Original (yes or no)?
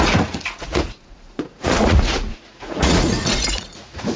no